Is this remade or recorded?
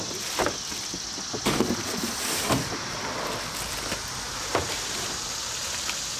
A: recorded